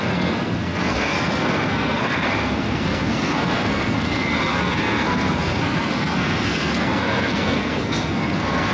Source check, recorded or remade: remade